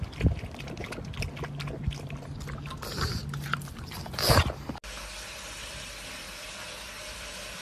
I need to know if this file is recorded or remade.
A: recorded